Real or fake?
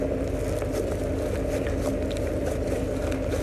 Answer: real